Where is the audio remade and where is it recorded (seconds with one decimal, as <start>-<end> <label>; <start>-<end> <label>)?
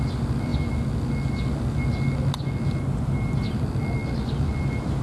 0.0-0.5 remade; 0.5-3.5 recorded; 3.5-4.0 remade; 4.0-5.0 recorded